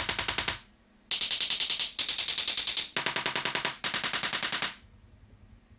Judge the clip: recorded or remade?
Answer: recorded